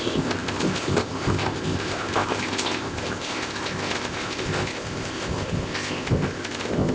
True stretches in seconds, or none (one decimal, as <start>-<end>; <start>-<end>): none